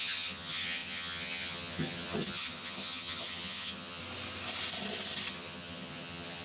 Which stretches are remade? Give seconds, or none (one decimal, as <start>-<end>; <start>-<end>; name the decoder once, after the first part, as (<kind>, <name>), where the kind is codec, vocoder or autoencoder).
0.0-4.0 (vocoder, HiFi-GAN); 5.3-6.4